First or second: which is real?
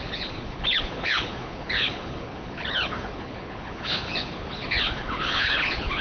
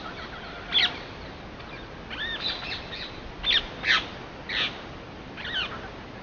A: second